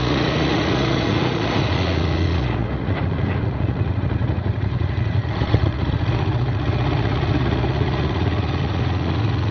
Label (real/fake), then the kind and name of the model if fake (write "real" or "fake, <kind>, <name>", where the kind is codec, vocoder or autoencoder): fake, vocoder, Vocos